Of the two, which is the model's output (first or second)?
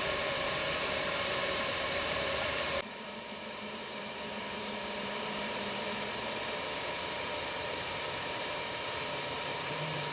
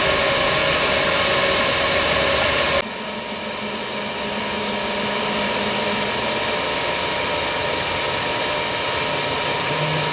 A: first